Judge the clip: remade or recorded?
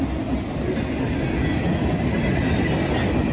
recorded